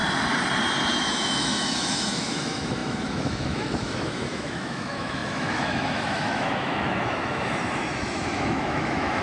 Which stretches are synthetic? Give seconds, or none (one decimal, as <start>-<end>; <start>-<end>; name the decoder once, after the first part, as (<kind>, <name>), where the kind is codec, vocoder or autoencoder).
1.0-9.2 (autoencoder, DAC-VAE)